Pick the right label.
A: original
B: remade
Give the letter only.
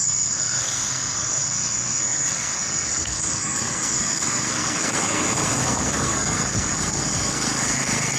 B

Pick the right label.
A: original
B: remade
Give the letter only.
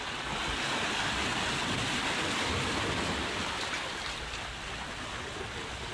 A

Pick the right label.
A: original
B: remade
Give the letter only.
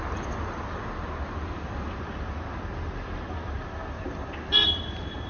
A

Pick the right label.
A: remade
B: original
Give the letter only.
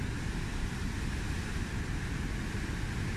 B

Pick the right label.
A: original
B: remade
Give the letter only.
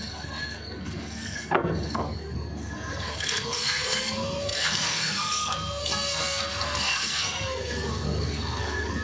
B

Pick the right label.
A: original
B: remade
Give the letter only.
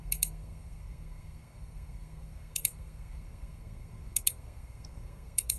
B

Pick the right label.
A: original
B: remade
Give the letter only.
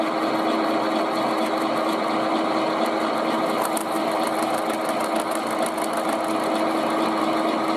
A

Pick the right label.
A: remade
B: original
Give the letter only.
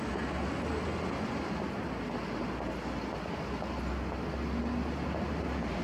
B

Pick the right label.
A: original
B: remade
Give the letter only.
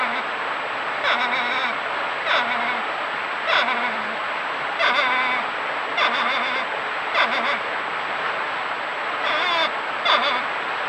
A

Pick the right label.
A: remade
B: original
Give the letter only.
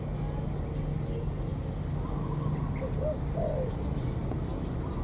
B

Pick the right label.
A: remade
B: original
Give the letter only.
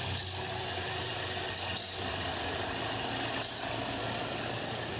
B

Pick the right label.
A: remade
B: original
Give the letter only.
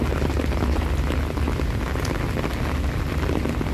B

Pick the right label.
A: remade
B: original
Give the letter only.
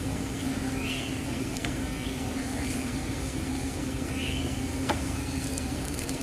A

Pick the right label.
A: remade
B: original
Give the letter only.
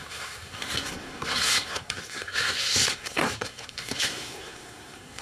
A